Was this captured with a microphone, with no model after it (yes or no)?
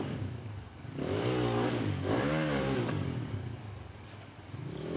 no